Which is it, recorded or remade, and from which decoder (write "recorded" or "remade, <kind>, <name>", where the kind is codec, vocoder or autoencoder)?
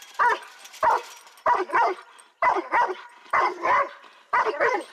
recorded